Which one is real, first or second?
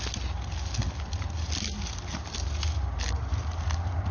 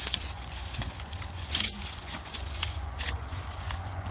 first